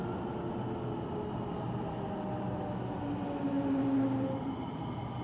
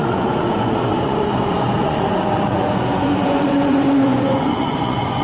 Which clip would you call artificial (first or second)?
second